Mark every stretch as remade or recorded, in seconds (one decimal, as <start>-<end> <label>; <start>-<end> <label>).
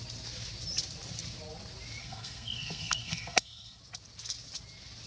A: 0.0-2.0 recorded; 2.0-3.8 remade; 3.8-5.1 recorded